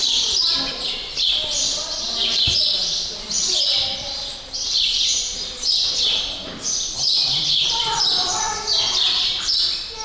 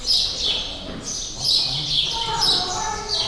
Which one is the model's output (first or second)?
first